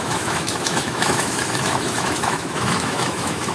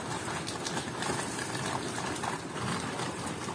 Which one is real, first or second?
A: second